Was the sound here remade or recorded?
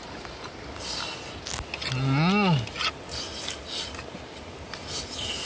recorded